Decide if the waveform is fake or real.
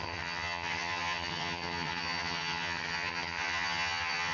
fake